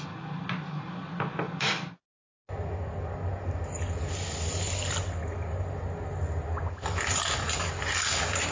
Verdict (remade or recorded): recorded